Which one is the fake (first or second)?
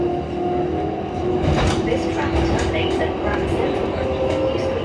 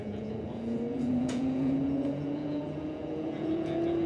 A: second